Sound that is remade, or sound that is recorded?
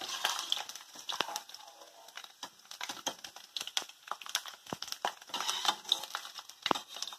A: recorded